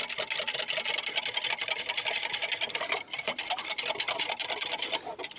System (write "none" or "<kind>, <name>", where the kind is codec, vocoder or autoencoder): none